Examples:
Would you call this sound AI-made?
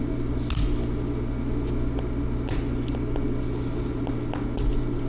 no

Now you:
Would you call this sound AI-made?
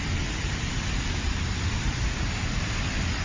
no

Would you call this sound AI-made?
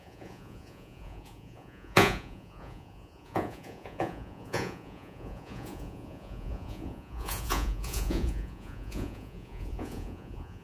yes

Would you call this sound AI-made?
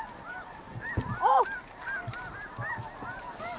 no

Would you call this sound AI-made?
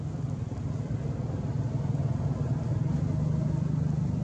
no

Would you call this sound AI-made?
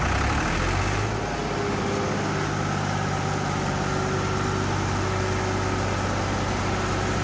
no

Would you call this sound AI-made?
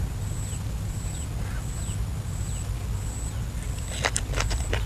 no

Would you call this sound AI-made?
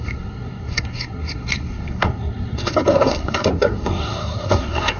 yes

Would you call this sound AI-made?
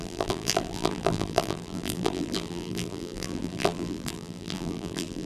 yes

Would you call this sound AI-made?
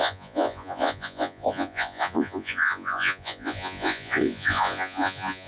yes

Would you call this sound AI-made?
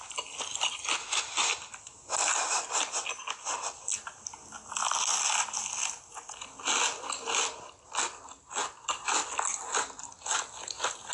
no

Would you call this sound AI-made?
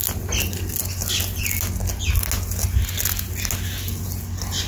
no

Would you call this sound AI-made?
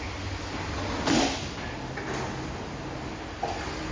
no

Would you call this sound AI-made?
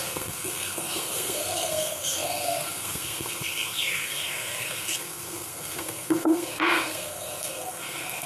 yes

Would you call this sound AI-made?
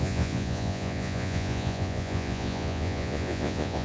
yes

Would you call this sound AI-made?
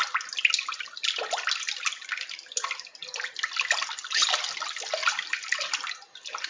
no